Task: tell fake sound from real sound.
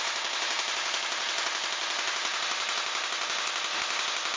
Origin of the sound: real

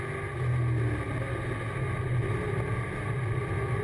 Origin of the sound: real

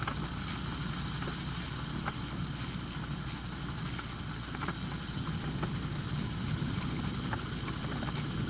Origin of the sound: real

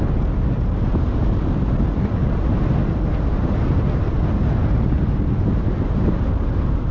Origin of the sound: real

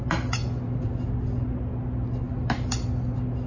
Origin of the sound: real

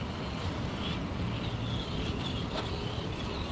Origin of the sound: real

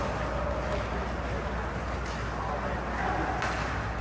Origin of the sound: real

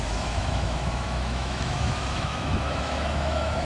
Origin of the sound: fake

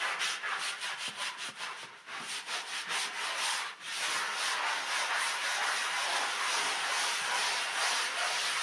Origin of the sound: real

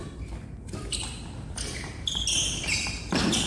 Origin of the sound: real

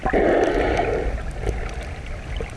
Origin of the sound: real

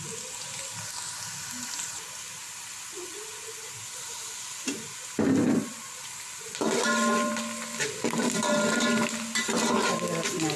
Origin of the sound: real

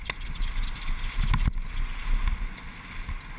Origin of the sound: real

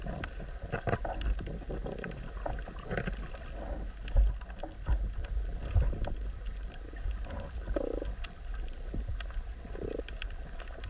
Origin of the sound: real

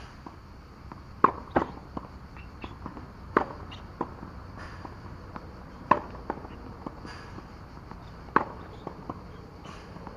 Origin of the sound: real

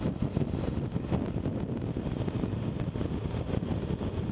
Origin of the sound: real